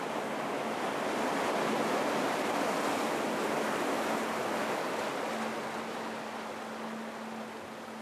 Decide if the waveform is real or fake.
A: real